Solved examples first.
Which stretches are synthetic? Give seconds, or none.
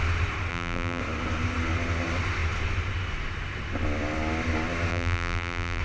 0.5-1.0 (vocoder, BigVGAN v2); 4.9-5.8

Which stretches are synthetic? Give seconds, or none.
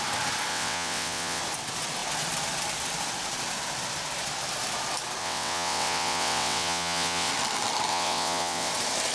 0.5-1.4 (vocoder, WaveNeXt); 5.2-7.3; 7.9-8.7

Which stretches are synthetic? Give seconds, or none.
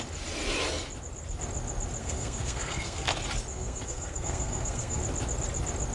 2.0-3.1 (codec, SNAC); 3.5-5.0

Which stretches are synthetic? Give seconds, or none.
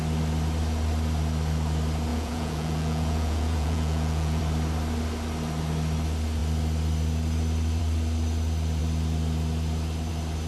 2.1-4.4 (vocoder, Vocos)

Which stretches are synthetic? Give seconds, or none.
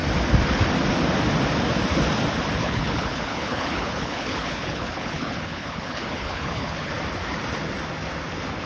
2.6-6.9 (codec, HILCodec)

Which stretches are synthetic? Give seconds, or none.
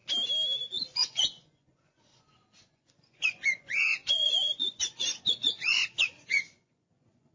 0.7-7.3 (vocoder, Vocos)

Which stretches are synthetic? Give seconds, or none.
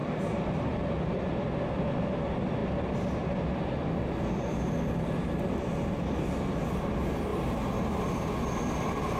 none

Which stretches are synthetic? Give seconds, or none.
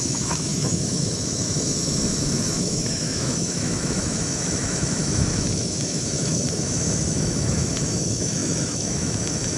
0.0-9.6 (autoencoder, DAC-VAE)